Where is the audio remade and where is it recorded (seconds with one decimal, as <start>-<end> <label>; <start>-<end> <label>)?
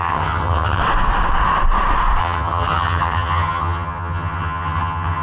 0.0-0.8 remade; 0.8-2.2 recorded; 2.2-5.2 remade